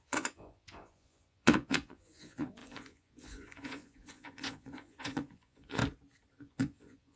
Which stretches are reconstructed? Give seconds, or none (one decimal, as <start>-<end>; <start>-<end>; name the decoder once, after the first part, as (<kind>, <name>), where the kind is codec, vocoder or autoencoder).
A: 0.0-5.8 (vocoder, Vocos); 6.4-7.2